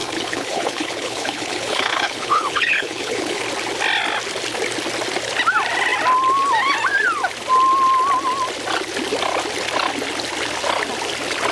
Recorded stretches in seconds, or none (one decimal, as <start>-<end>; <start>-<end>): 3.4-11.5